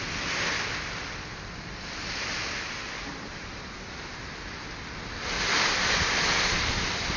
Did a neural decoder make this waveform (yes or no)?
no